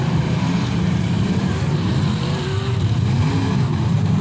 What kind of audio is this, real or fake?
fake